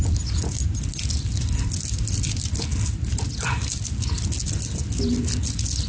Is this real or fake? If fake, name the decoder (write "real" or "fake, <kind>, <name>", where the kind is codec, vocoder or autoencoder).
real